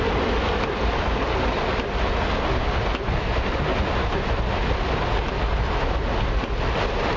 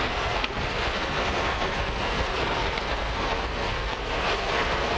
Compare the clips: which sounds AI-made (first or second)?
second